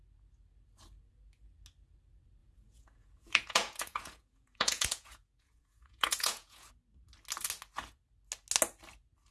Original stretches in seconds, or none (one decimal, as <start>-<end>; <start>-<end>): 0.0-2.4; 6.7-9.3